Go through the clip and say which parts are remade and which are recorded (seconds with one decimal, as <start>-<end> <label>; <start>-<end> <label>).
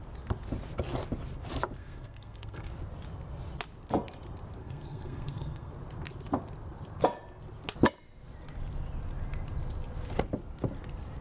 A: 0.0-1.8 recorded; 1.8-2.7 remade; 2.7-4.6 recorded; 4.6-5.7 remade; 5.7-11.2 recorded